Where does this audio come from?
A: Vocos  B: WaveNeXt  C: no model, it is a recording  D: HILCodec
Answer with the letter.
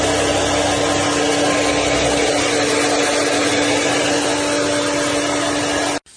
C